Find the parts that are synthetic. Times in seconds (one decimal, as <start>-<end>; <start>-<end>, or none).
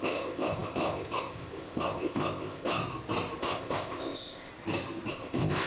0.0-2.8; 3.4-4.5; 5.1-5.7